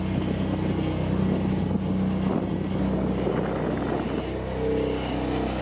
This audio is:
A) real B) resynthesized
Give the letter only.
A